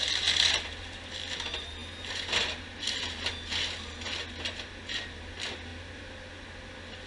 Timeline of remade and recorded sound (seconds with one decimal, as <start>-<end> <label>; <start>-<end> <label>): 0.0-7.1 recorded